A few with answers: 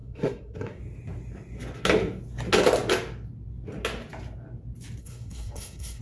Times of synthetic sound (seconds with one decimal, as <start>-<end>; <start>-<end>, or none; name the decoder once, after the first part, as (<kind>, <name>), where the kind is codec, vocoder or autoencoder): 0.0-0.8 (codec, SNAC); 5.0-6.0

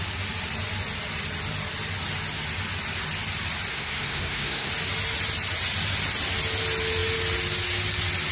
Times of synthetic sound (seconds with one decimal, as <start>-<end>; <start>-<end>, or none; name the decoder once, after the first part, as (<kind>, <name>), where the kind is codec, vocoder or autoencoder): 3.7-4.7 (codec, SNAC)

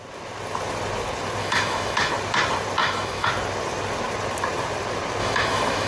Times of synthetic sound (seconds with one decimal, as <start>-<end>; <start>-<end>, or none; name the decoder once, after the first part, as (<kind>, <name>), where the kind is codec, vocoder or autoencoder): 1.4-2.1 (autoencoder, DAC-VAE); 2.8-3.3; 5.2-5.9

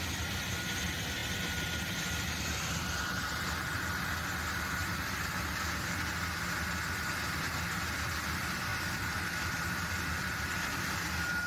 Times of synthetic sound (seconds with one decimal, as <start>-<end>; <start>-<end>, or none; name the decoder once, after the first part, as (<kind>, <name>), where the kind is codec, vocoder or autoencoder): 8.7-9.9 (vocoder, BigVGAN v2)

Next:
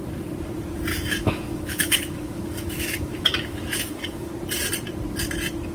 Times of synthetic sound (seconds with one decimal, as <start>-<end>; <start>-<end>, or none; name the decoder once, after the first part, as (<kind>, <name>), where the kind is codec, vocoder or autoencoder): 0.9-4.3 (autoencoder, DAC-VAE)